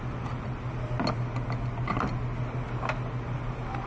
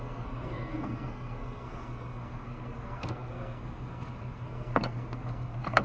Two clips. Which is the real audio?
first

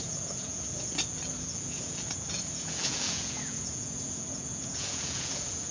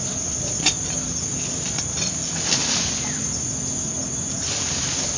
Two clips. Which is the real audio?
second